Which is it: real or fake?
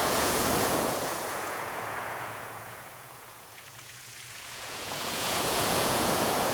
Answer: fake